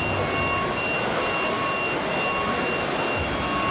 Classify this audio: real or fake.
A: real